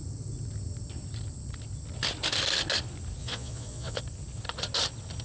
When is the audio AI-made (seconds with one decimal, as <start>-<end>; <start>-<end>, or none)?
3.2-4.0